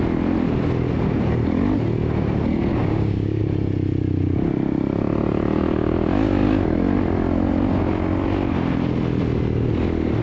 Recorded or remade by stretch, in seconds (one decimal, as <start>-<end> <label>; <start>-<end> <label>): 0.0-2.7 recorded; 2.7-3.4 remade; 3.4-10.2 recorded